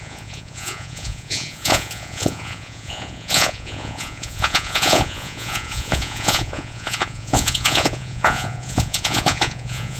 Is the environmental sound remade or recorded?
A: remade